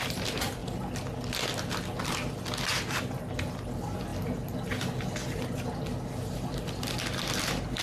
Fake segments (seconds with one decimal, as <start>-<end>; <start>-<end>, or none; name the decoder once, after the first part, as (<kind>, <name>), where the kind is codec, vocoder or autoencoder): none